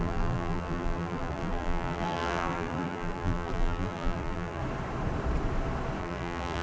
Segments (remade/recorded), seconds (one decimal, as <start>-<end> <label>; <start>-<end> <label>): 0.0-4.6 remade; 4.6-6.0 recorded; 6.0-6.6 remade